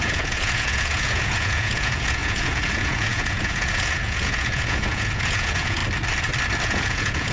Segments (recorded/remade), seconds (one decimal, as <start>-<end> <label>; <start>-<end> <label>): 0.0-5.8 remade; 5.8-6.6 recorded; 6.6-7.3 remade